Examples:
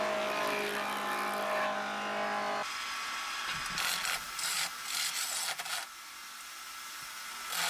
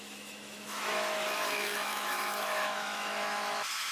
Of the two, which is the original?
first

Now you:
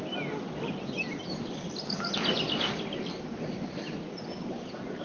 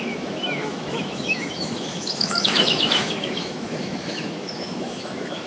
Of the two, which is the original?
first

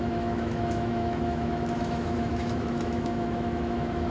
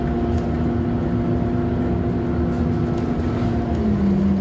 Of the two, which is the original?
second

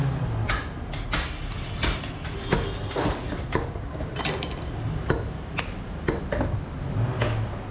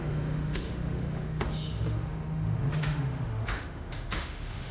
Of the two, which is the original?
first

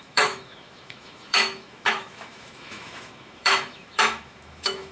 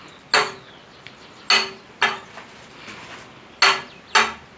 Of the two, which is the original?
second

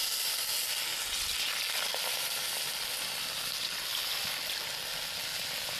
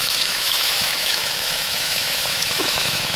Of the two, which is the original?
first